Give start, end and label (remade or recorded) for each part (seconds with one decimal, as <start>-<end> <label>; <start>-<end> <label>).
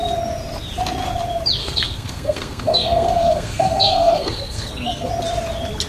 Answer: 0.0-1.6 recorded; 1.6-5.1 remade; 5.1-5.9 recorded